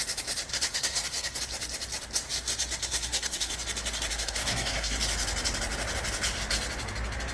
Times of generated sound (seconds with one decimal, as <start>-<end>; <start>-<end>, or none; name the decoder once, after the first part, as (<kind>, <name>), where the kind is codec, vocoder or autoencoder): 0.5-1.4 (codec, SNAC); 2.8-3.5; 4.1-5.0

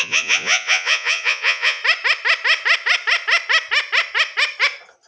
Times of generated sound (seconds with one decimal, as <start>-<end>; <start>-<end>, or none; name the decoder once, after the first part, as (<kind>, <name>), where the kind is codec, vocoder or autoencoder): 0.0-1.8 (vocoder, Vocos)

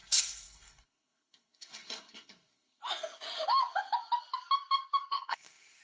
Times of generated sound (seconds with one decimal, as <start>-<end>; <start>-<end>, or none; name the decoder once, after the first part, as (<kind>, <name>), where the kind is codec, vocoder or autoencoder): 0.0-2.8 (codec, SNAC); 5.1-5.8

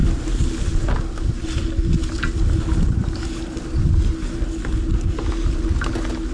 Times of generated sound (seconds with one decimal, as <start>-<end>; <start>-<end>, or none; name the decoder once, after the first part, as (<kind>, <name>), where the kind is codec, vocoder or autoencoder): none

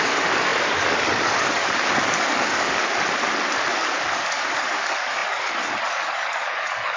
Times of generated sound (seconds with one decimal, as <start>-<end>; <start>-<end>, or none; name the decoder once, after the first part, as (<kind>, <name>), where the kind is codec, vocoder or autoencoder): 0.0-2.8 (codec, DAC); 3.7-7.0

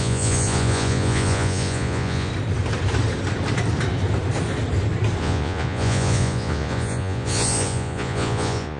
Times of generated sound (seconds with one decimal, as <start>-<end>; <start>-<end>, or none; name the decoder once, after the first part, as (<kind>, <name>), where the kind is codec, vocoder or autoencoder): 0.0-2.3 (vocoder, Vocos); 5.2-8.8

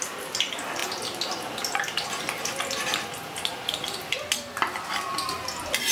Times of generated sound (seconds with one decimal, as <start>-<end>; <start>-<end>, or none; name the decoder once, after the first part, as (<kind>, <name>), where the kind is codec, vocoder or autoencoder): none

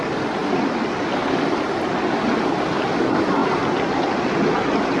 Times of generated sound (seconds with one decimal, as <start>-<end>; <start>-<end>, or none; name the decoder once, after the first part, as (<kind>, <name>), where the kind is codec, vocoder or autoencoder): none